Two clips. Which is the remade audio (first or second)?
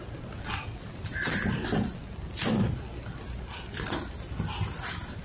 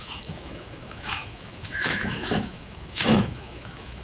second